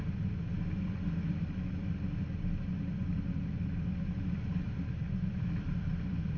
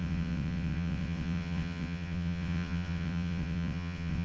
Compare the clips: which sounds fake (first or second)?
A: second